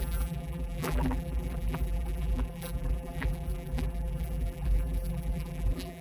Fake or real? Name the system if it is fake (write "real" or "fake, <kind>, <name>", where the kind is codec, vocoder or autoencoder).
fake, vocoder, BigVGAN v2